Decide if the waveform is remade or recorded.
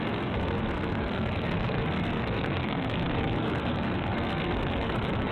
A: remade